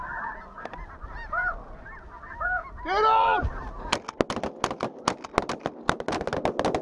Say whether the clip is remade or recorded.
recorded